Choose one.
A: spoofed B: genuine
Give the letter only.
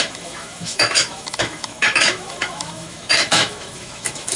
A